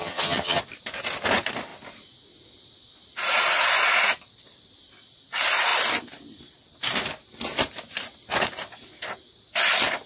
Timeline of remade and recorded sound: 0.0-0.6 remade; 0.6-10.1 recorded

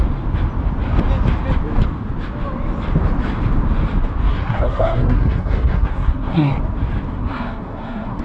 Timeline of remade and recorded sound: 0.0-4.3 recorded; 4.3-6.5 remade; 6.5-7.1 recorded; 7.1-8.2 remade

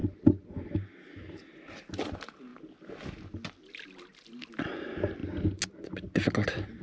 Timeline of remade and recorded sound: 0.0-6.8 recorded

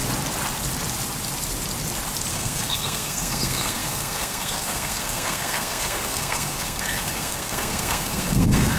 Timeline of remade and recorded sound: 0.0-2.3 recorded; 2.3-8.8 remade

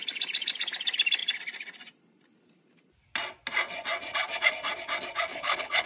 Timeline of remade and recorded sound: 0.0-5.3 recorded; 5.3-5.9 remade

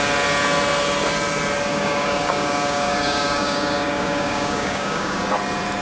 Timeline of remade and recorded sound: 0.0-1.7 recorded; 1.7-5.2 remade; 5.2-5.8 recorded

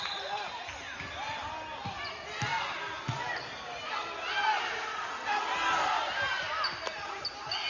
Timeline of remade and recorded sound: 0.0-7.7 recorded

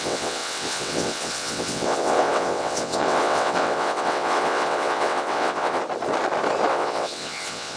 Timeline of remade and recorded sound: 0.0-5.8 remade; 5.8-6.7 recorded; 6.7-7.8 remade